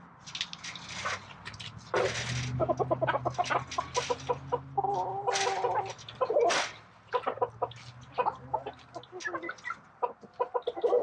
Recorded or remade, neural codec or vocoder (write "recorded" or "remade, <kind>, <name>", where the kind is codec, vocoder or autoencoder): recorded